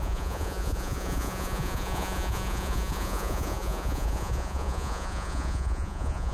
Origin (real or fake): fake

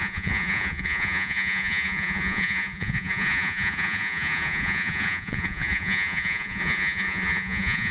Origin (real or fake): fake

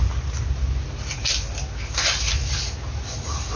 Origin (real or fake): real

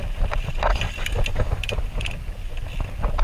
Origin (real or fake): real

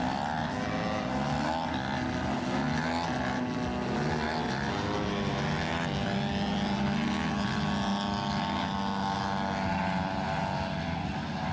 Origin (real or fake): real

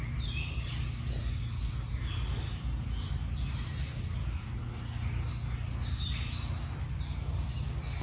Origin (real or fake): real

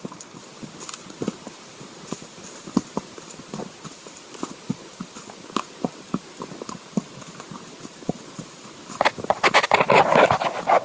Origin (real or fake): real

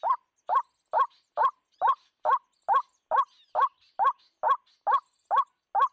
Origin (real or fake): real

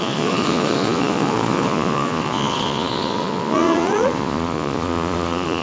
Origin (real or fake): fake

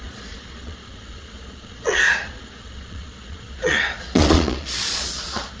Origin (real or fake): fake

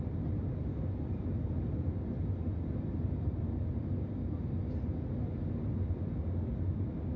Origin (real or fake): real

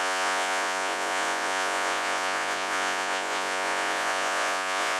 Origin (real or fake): fake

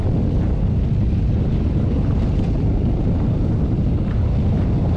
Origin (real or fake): real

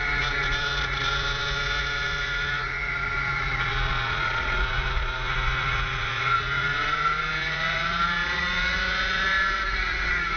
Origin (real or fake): fake